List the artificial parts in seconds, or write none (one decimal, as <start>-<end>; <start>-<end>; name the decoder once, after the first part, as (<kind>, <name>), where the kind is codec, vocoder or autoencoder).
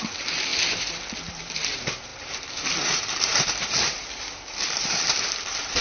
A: 0.0-0.5 (vocoder, BigVGAN v2); 1.3-5.8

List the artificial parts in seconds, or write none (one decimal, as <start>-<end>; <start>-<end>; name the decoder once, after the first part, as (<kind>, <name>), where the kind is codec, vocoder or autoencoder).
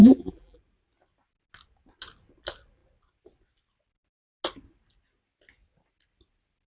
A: 0.0-0.6 (vocoder, BigVGAN v2)